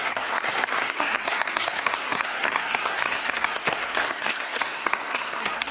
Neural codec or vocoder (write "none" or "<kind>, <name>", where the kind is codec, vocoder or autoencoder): codec, SNAC